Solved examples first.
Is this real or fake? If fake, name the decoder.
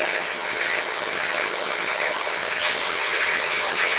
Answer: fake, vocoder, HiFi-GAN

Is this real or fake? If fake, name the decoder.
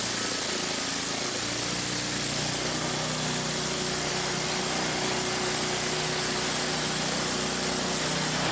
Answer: real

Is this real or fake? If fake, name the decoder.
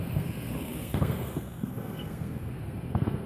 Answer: fake, codec, SNAC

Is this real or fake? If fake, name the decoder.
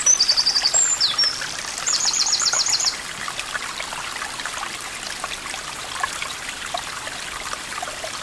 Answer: fake, vocoder, BigVGAN v2